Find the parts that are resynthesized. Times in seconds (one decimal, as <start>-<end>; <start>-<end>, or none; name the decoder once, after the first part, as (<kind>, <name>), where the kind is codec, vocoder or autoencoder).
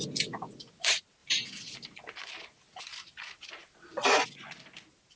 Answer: none